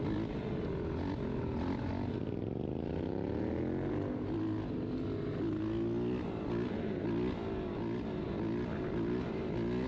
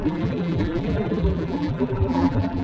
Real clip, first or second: first